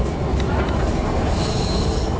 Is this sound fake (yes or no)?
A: no